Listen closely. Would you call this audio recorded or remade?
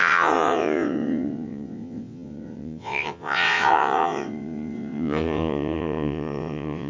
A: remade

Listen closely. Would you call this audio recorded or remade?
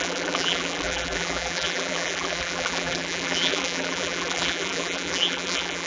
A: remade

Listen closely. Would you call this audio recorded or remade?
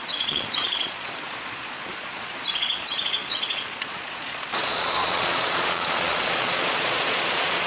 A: remade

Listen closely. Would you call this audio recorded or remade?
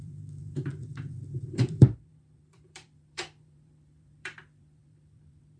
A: remade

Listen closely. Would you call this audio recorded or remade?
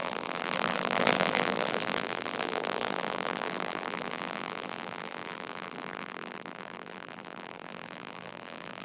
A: remade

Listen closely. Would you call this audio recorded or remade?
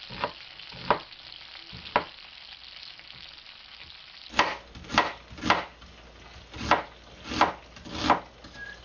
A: recorded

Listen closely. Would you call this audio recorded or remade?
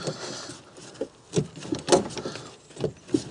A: recorded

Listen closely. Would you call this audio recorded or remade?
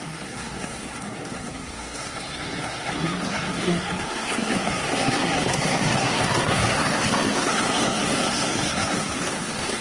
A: remade